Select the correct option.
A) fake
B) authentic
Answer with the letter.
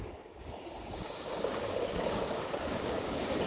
A